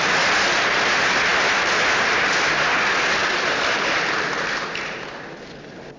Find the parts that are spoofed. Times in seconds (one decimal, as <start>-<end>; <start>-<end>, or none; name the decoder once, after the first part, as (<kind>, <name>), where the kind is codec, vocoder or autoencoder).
none